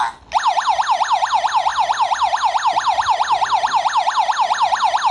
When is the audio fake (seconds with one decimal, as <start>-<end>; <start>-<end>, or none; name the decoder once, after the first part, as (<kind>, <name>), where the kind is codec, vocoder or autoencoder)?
none